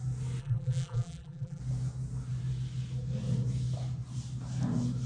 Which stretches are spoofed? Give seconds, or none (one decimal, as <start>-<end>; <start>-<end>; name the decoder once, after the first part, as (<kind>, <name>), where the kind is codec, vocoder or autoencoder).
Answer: 0.4-1.6 (vocoder, BigVGAN v2)